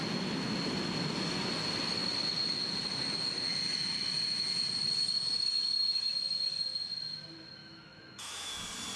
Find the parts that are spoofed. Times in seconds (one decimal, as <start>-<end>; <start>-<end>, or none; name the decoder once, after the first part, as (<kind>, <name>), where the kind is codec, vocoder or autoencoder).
7.6-8.5 (autoencoder, DAC-VAE)